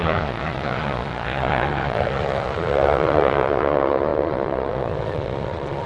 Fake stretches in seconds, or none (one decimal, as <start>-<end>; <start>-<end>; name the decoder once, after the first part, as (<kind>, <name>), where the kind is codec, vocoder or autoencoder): 0.0-5.9 (vocoder, Vocos)